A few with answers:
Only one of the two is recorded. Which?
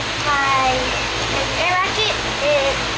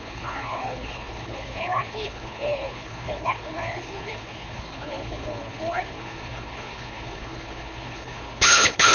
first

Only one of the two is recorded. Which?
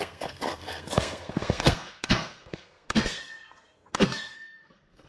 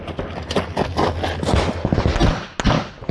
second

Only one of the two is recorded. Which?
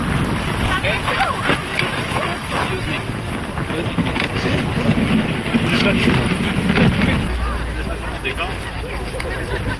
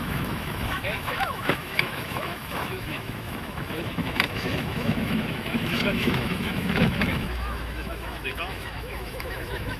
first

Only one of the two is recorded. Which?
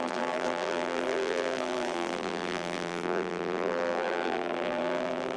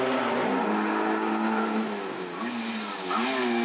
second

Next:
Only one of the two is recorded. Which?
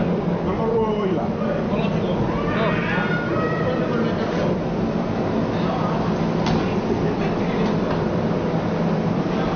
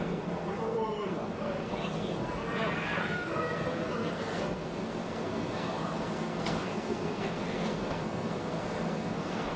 first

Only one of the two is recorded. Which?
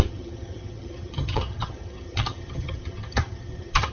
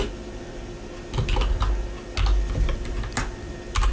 second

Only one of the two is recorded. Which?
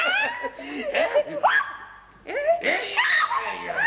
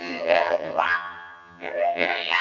first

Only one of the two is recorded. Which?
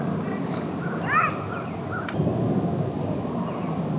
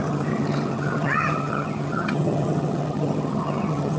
first